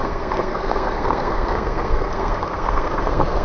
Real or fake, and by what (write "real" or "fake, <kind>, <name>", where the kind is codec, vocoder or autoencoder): fake, codec, SNAC